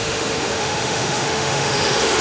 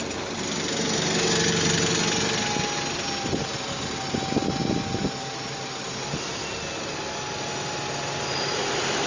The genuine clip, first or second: second